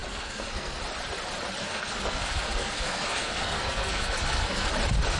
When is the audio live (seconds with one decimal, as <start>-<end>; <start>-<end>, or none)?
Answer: 0.8-1.6; 4.7-5.2